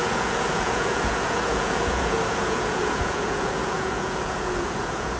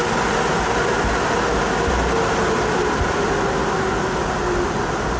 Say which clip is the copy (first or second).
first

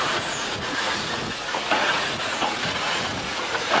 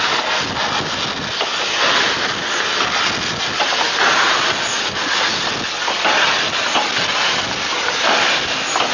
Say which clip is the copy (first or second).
first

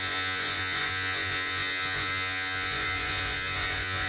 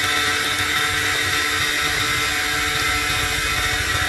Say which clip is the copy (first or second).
first